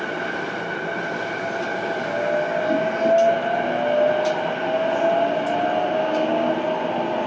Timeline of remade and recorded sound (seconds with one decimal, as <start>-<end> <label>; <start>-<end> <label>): 0.0-6.0 recorded; 6.0-6.5 remade; 6.5-7.3 recorded